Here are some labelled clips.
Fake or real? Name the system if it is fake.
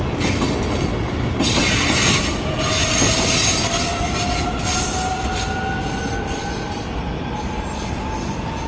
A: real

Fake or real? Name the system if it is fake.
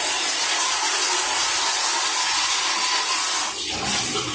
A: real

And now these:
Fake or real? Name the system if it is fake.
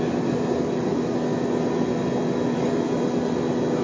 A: real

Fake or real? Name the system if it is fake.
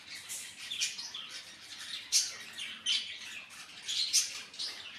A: real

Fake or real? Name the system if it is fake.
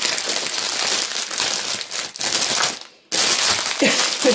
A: real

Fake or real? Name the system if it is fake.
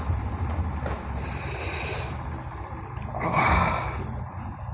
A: real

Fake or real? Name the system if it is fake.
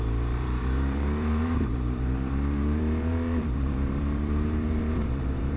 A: fake, vocoder, BigVGAN v2